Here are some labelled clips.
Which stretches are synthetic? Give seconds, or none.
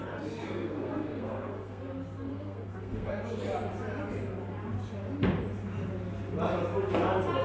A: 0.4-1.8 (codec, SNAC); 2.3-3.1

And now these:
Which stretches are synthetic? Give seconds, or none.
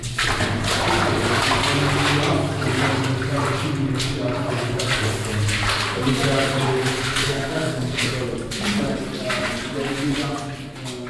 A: 7.2-8.1 (codec, SNAC)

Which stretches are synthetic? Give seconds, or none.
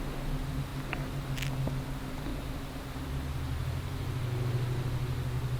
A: 2.3-3.1 (vocoder, BigVGAN v2)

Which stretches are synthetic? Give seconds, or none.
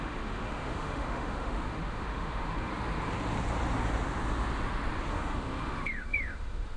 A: 0.0-2.7 (autoencoder, DAC-VAE); 5.1-6.8